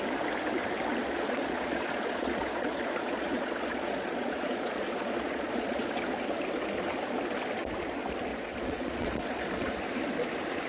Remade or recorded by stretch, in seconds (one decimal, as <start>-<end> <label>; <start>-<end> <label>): 0.0-1.0 recorded; 1.0-6.0 remade; 6.0-8.3 recorded; 8.3-9.7 remade; 9.7-10.7 recorded